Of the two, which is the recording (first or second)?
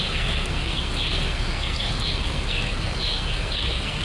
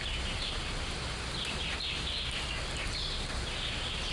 second